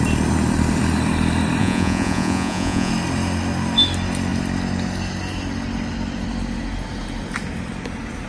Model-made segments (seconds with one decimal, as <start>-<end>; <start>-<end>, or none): 1.6-2.9